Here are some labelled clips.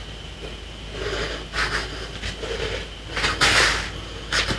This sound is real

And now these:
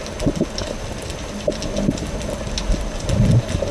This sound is real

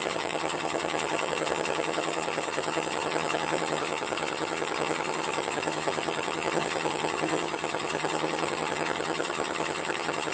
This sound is fake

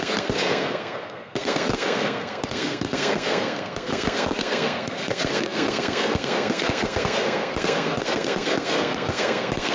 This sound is fake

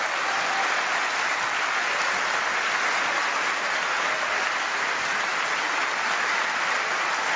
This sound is real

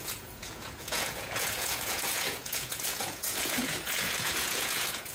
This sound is fake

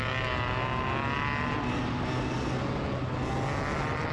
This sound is real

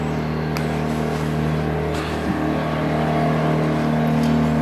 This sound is real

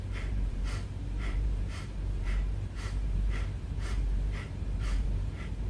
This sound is fake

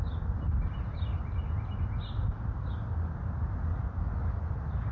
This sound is real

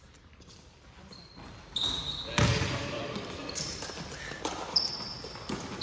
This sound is real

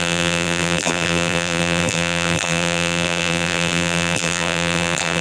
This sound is fake